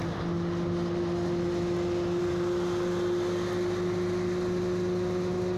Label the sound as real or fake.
real